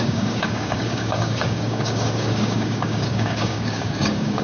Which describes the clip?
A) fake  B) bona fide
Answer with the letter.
A